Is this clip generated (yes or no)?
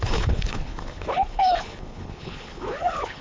yes